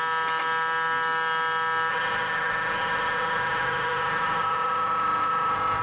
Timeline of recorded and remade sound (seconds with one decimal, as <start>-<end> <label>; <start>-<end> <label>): 0.0-1.9 recorded; 1.9-5.8 remade

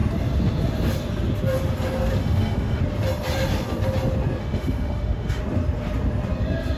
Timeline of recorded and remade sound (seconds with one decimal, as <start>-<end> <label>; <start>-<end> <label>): 0.0-2.2 recorded; 2.2-2.8 remade; 2.8-4.4 recorded; 4.4-5.4 remade; 5.4-6.8 recorded